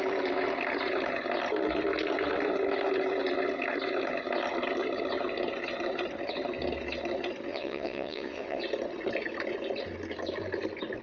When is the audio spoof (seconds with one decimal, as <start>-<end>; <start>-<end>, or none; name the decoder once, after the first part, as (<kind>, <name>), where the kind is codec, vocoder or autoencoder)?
7.5-8.6 (vocoder, WaveNeXt)